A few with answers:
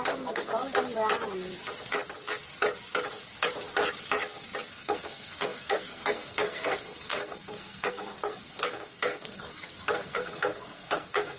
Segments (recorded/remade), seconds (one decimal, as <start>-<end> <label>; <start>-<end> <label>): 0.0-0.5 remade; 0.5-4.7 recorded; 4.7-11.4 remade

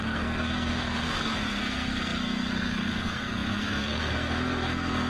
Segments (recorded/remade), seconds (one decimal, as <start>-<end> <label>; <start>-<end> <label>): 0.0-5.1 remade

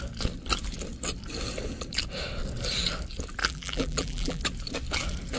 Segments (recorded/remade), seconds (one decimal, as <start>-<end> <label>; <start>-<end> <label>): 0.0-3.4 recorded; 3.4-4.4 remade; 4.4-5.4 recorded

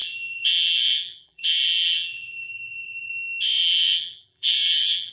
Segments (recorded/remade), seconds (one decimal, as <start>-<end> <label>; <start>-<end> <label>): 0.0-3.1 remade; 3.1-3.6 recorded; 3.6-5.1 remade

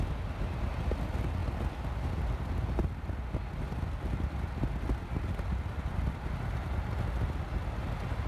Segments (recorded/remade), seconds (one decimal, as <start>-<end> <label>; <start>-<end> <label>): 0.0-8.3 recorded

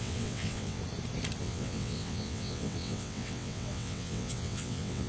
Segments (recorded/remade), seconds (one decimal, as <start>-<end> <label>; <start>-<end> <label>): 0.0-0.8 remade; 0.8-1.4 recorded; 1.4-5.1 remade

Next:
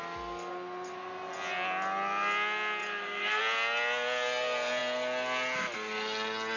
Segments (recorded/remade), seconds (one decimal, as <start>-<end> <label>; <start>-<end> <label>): 0.0-2.8 recorded; 2.8-3.4 remade; 3.4-6.6 recorded